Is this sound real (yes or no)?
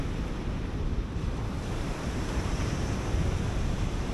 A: no